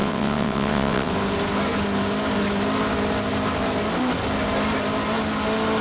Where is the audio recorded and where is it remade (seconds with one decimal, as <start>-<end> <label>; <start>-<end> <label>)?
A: 0.0-1.1 remade; 1.1-5.8 recorded